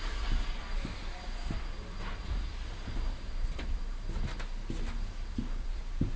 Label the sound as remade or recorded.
recorded